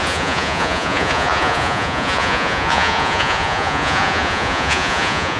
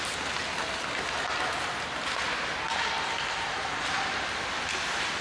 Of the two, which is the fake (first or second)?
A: first